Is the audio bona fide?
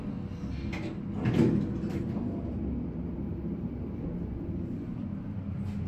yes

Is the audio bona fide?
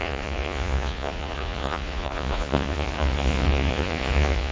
no